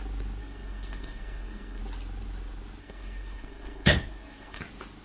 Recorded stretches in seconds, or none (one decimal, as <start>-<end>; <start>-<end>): 0.0-0.4; 1.8-2.8; 4.6-5.0